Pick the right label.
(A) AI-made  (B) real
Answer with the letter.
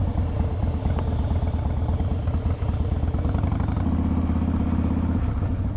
B